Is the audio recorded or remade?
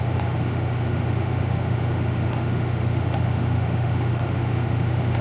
remade